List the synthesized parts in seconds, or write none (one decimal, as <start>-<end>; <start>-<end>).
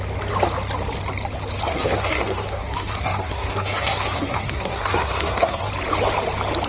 1.7-5.7